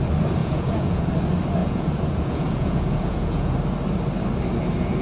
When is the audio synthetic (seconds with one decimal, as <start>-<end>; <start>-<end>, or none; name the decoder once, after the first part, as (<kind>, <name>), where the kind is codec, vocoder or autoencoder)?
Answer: 0.4-1.1 (vocoder, Vocos); 1.6-3.5